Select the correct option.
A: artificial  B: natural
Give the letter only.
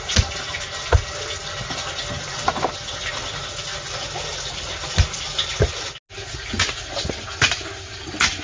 B